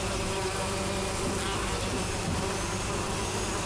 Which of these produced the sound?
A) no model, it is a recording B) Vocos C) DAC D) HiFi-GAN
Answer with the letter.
A